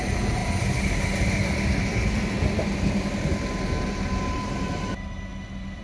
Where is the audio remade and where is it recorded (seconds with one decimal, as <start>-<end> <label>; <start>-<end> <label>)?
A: 0.0-0.4 remade; 0.4-3.9 recorded; 3.9-5.3 remade; 5.3-5.8 recorded

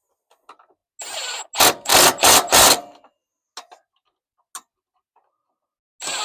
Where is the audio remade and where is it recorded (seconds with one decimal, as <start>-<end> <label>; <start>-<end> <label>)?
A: 0.0-6.2 recorded

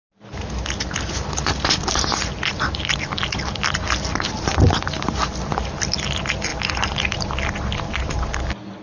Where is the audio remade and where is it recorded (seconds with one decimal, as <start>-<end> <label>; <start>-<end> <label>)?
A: 0.0-8.8 recorded

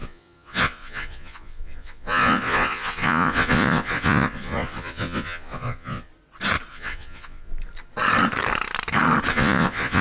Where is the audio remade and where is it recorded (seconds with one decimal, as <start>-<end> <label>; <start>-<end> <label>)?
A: 0.0-6.1 remade; 6.1-6.7 recorded; 6.7-7.5 remade; 7.5-9.3 recorded; 9.3-10.0 remade

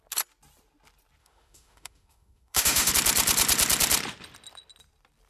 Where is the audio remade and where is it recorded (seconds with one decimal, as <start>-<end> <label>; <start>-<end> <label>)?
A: 0.0-1.2 recorded; 1.2-2.9 remade; 2.9-5.3 recorded

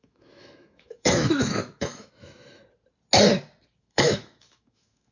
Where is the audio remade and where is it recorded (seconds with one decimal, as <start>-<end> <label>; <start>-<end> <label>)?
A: 0.0-2.6 remade; 2.6-3.8 recorded; 3.8-5.1 remade

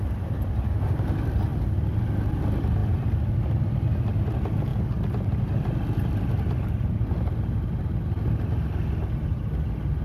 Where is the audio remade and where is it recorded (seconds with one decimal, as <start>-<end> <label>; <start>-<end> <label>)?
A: 0.0-10.0 recorded

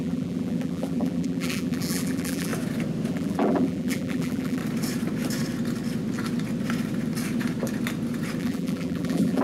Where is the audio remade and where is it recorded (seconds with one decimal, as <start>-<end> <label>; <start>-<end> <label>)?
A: 0.0-2.5 remade; 2.5-3.1 recorded; 3.1-4.6 remade; 4.6-8.4 recorded; 8.4-9.4 remade